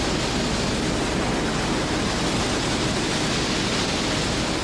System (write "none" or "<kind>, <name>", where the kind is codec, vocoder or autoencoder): none